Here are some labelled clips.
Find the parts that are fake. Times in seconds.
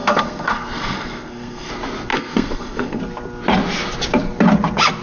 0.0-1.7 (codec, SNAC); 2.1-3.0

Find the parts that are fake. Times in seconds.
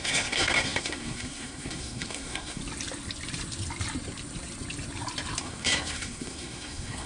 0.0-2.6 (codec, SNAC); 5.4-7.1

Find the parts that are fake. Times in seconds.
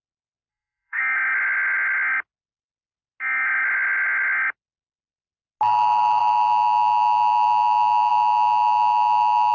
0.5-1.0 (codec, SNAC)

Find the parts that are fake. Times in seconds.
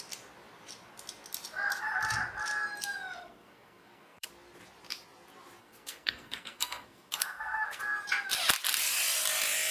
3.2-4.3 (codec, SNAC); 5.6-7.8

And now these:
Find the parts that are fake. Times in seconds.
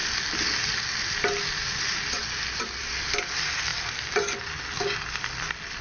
none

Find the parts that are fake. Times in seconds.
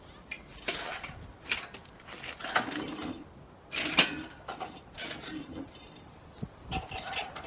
none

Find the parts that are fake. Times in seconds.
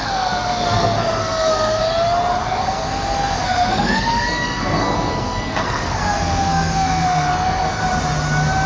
0.0-1.8 (codec, SNAC); 2.3-7.8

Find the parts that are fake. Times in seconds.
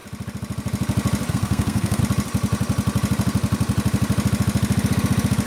1.3-2.0 (codec, SNAC)